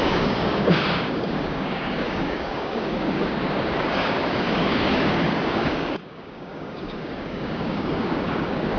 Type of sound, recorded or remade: remade